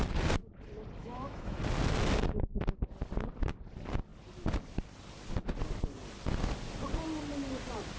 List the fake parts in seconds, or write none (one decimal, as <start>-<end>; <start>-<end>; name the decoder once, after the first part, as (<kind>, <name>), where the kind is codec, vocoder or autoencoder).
1.0-1.6 (autoencoder, DAC-VAE)